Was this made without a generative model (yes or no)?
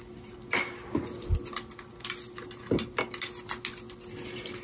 yes